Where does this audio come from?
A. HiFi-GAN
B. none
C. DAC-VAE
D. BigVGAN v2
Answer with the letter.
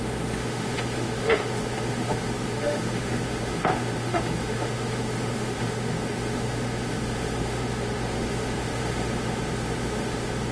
C